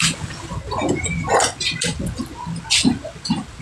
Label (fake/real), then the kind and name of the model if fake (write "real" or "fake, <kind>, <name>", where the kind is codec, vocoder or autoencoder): real